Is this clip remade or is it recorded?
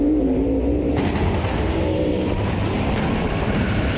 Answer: remade